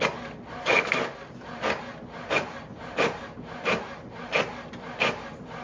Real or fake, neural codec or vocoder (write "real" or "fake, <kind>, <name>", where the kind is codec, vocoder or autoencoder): real